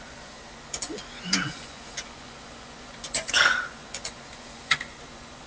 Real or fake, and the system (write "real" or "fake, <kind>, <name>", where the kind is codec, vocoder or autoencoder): fake, vocoder, Vocos